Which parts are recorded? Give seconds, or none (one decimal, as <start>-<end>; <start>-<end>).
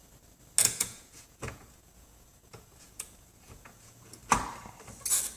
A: 0.0-0.6; 4.2-5.4